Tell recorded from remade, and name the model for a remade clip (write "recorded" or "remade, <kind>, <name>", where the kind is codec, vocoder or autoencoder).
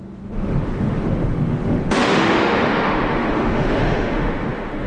remade, autoencoder, DAC-VAE